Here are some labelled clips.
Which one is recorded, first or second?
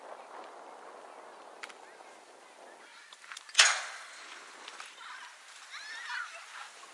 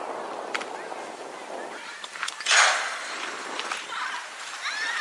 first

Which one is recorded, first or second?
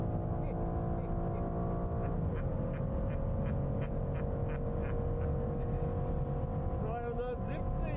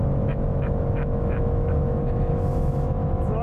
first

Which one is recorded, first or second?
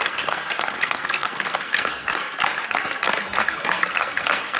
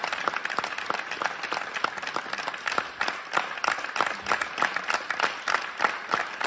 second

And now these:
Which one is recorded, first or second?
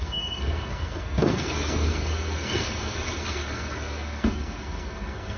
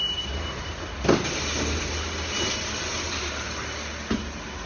second